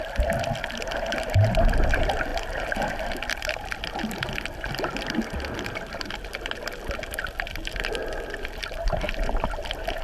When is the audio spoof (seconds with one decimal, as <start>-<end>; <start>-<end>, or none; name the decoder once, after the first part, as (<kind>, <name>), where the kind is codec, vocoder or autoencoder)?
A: none